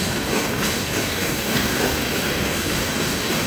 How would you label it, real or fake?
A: fake